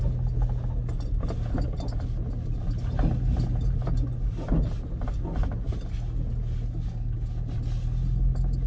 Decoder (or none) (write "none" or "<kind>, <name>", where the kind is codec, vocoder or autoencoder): none